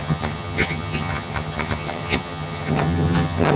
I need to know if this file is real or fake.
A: fake